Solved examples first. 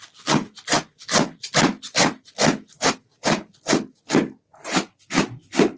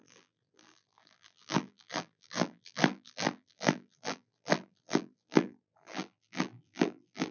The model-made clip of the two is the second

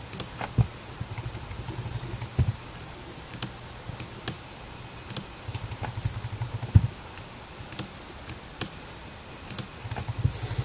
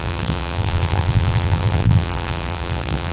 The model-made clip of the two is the second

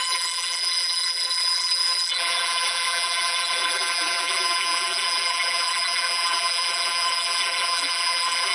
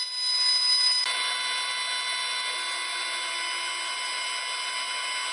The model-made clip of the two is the first